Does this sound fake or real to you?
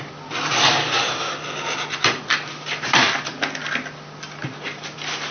real